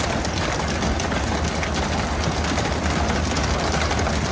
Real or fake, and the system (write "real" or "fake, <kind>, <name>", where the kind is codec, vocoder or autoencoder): real